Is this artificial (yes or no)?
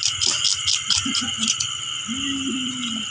no